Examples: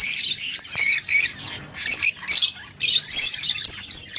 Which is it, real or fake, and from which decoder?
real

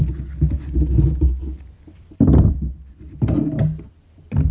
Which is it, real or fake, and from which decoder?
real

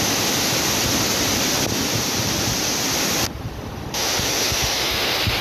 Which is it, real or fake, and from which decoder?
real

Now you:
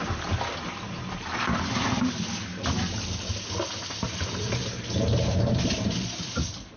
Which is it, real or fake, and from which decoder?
real